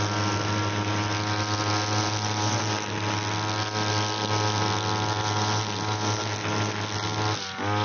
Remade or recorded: recorded